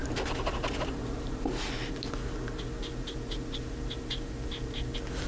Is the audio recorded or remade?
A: recorded